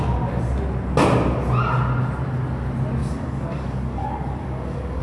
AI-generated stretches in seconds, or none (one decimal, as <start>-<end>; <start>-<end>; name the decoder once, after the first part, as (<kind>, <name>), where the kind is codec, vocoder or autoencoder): 3.0-5.0 (codec, DAC)